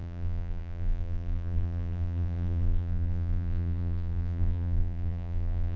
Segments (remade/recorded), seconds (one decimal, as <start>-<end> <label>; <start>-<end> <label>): 0.0-5.8 remade